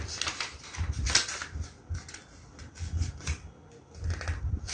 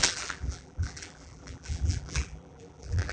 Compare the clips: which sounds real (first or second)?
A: first